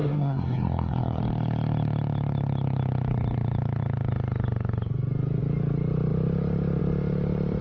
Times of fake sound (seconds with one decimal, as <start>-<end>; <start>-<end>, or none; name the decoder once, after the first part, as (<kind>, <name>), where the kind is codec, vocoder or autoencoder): 0.0-1.2 (codec, SNAC)